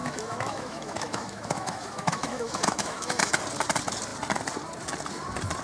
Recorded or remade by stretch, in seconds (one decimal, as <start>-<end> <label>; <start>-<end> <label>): 0.0-3.4 remade; 3.4-5.6 recorded